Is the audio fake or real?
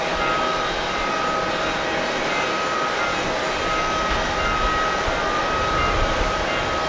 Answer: real